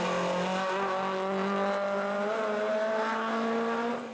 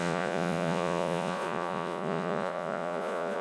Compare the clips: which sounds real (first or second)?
first